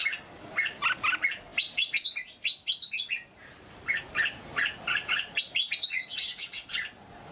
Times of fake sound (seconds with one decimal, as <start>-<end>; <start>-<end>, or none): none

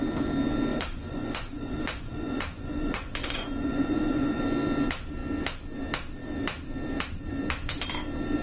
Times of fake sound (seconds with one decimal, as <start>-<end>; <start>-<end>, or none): 0.7-4.4

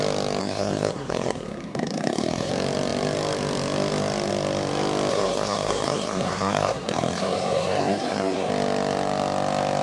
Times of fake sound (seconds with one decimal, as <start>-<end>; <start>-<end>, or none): 0.4-2.5; 5.1-8.5

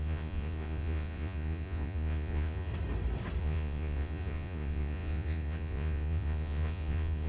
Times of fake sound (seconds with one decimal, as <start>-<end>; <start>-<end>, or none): 0.0-2.7; 3.4-7.3

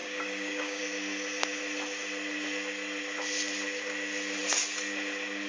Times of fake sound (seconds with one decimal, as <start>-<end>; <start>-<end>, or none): 0.0-0.8

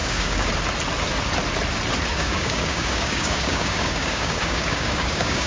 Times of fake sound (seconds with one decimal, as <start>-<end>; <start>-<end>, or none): 0.0-0.5; 2.1-5.5

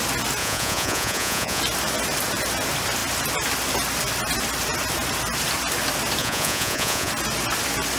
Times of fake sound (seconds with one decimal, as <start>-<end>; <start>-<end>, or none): 0.4-1.6; 6.2-7.1